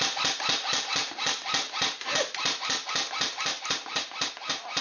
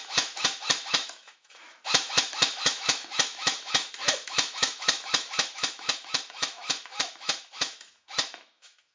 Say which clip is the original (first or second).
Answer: first